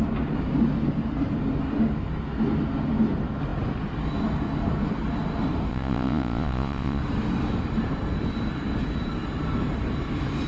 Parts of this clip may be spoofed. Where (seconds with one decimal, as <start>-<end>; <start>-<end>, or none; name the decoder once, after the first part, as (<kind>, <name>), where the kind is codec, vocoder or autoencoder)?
5.7-7.0 (vocoder, Vocos)